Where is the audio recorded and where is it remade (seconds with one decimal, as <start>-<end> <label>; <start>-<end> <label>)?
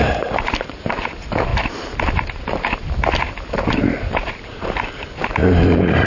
0.0-1.5 remade; 1.5-2.2 recorded; 2.2-2.8 remade; 2.8-3.7 recorded; 3.7-6.1 remade